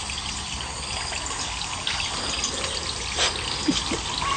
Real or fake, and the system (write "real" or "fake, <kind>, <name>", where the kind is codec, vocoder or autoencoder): real